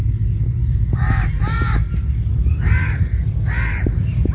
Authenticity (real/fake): fake